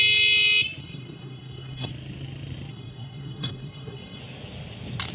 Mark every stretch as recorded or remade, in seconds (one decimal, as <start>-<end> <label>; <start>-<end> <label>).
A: 0.0-0.8 recorded; 0.8-1.9 remade; 1.9-2.7 recorded; 2.7-4.2 remade; 4.2-5.1 recorded